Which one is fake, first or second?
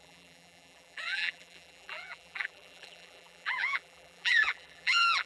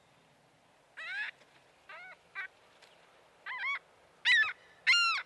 first